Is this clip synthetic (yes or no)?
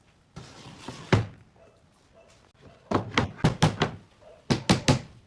no